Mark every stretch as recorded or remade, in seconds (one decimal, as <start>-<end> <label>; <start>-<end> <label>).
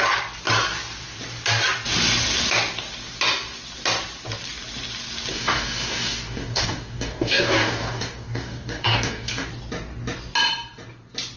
0.0-5.3 recorded; 5.3-9.5 remade; 9.5-11.4 recorded